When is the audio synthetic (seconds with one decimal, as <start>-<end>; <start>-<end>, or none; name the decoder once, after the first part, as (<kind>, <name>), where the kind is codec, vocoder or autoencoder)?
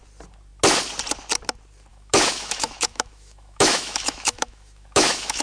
1.9-5.4 (autoencoder, DAC-VAE)